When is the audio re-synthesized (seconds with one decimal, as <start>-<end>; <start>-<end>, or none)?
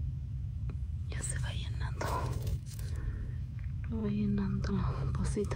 0.0-5.6